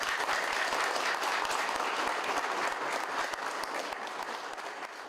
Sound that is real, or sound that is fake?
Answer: real